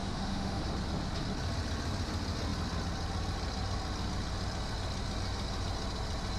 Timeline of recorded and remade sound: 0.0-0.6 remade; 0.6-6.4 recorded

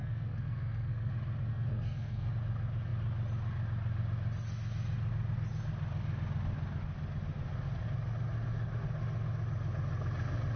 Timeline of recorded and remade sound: 0.0-1.1 remade; 1.1-1.5 recorded; 1.5-2.3 remade; 2.3-10.6 recorded

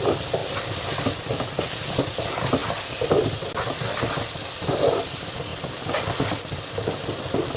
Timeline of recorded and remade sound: 0.0-7.6 recorded

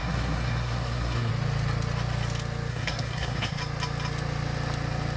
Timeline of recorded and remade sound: 0.0-1.3 remade; 1.3-2.7 recorded; 2.7-3.6 remade; 3.6-5.2 recorded